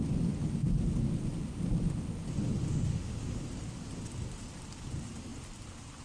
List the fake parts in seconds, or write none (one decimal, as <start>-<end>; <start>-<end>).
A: 2.7-3.4